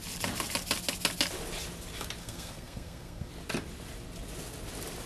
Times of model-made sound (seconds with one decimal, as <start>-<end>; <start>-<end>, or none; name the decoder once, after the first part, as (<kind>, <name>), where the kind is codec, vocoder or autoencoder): 2.2-3.3 (codec, SNAC)